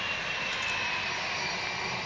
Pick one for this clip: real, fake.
real